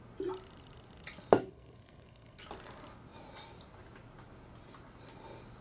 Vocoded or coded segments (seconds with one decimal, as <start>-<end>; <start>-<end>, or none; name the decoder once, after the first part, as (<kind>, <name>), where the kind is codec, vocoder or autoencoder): 1.4-2.4 (codec, SNAC)

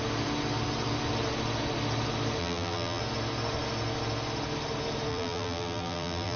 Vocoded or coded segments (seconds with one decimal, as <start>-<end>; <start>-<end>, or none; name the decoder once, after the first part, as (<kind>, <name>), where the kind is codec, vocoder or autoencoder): 2.4-3.0 (vocoder, BigVGAN v2); 5.1-6.4

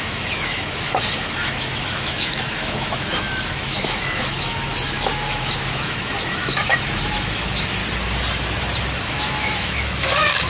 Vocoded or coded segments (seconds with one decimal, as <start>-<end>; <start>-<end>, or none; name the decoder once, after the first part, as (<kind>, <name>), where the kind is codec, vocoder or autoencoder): 0.0-7.8 (autoencoder, DAC-VAE); 9.0-10.5

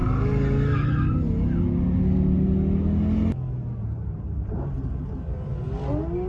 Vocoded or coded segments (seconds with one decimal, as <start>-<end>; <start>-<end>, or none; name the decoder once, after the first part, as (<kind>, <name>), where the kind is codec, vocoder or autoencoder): 3.8-5.5 (vocoder, BigVGAN v2)

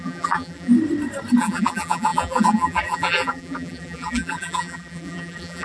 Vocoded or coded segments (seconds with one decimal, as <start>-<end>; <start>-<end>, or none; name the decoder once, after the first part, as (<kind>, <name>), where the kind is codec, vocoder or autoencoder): 0.0-0.7 (vocoder, BigVGAN v2); 1.4-5.6

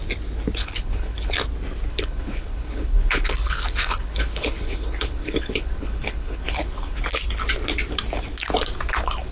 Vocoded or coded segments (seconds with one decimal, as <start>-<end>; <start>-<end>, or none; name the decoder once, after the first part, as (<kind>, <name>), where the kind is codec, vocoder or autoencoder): 0.6-1.3 (codec, HILCodec); 1.9-7.0

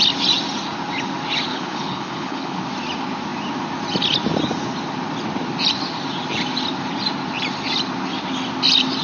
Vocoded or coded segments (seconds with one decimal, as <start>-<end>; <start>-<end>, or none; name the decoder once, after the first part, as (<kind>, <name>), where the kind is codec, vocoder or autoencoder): 1.5-2.6 (codec, HILCodec)